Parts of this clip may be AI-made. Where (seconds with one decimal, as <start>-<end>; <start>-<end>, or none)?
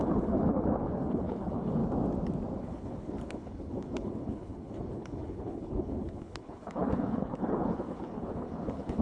0.0-1.8; 2.6-9.0